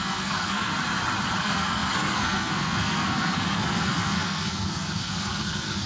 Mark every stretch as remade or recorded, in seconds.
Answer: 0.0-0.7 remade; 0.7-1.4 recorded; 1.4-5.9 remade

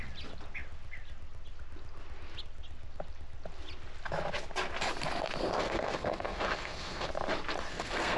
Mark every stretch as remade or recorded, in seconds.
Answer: 0.0-5.4 recorded; 5.4-7.1 remade; 7.1-7.7 recorded; 7.7-8.2 remade

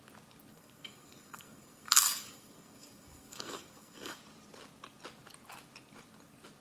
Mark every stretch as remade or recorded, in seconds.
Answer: 0.0-0.5 recorded; 0.5-4.2 remade; 4.2-6.6 recorded

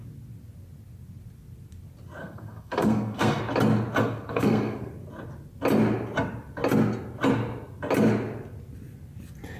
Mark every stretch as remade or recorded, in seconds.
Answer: 0.0-2.2 recorded; 2.2-3.4 remade; 3.4-4.0 recorded; 4.0-4.9 remade; 4.9-9.6 recorded

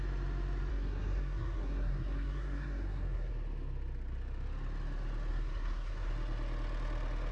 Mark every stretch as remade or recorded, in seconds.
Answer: 0.0-0.7 recorded; 0.7-3.3 remade; 3.3-5.3 recorded; 5.3-6.1 remade; 6.1-7.3 recorded

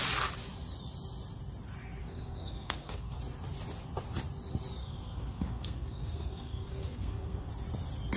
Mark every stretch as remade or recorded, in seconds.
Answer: 0.0-2.0 recorded; 2.0-3.2 remade; 3.2-4.8 recorded; 4.8-7.5 remade; 7.5-8.2 recorded

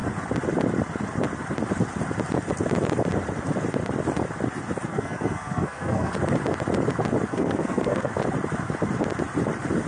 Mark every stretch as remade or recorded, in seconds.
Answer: 0.0-4.9 recorded; 4.9-6.1 remade; 6.1-7.3 recorded; 7.3-8.1 remade; 8.1-9.9 recorded

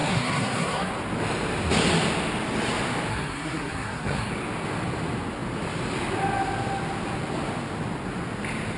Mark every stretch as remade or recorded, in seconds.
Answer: 0.0-0.9 remade; 0.9-3.1 recorded; 3.1-4.3 remade; 4.3-8.8 recorded